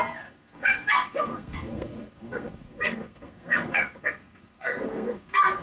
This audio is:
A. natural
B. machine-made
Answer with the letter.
B